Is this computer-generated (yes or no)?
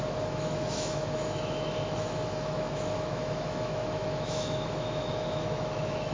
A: yes